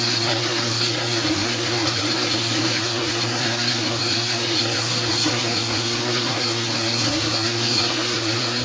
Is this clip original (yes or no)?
no